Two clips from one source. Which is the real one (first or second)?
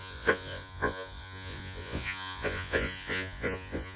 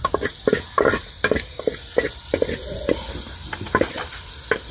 second